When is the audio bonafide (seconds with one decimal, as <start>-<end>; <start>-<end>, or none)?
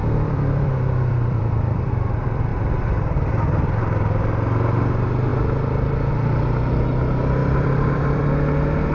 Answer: 1.9-2.5; 3.3-7.4; 8.2-8.9